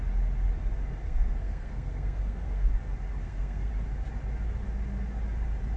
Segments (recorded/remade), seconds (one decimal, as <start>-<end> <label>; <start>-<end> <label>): 0.0-1.0 recorded; 1.0-2.7 remade; 2.7-3.2 recorded; 3.2-3.7 remade; 3.7-5.8 recorded